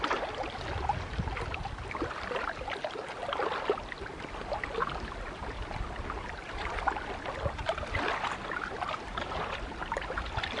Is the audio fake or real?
real